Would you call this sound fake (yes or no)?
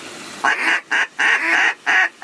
no